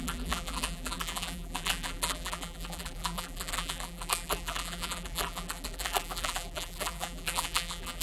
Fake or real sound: fake